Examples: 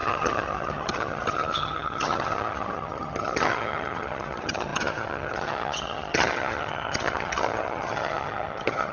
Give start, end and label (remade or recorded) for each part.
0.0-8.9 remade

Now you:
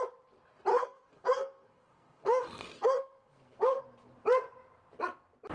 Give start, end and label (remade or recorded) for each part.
0.0-0.7 recorded; 0.7-3.8 remade; 3.8-5.5 recorded

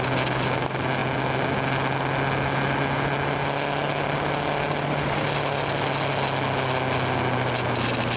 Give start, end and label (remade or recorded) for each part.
0.0-8.2 recorded

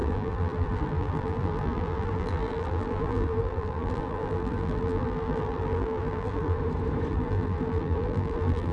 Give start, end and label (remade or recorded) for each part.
0.0-6.6 remade; 6.6-7.1 recorded; 7.1-8.7 remade

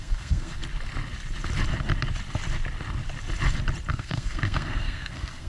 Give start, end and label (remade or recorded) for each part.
0.0-0.6 remade; 0.6-3.9 recorded; 3.9-5.5 remade

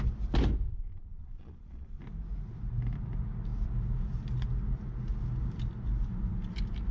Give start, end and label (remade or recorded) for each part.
0.0-0.7 recorded; 0.7-2.0 remade; 2.0-6.9 recorded